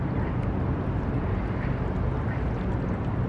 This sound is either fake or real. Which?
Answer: real